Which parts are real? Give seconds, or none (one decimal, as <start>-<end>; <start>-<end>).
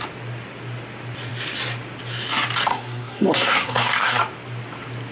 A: 0.0-2.7; 4.2-5.1